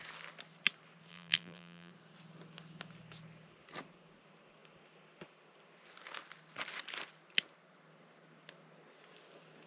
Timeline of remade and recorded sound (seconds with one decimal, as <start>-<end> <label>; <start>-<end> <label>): 0.0-1.1 recorded; 1.1-1.9 remade; 1.9-9.7 recorded